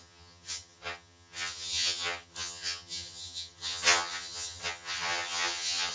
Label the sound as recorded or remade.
remade